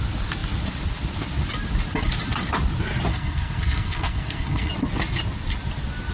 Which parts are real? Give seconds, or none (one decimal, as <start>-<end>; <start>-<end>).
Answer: 0.0-3.1; 4.7-6.1